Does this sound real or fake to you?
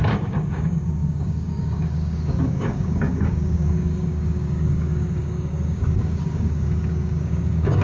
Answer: fake